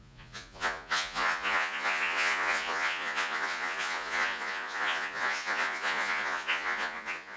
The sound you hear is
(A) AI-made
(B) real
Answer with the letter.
A